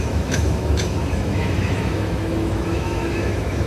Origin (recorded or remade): remade